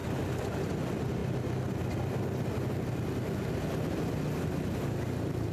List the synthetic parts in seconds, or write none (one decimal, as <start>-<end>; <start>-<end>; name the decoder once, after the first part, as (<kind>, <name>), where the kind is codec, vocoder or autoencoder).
0.0-0.7 (vocoder, BigVGAN v2)